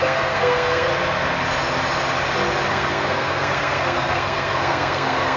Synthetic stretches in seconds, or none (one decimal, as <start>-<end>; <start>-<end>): 0.0-0.9; 2.7-5.4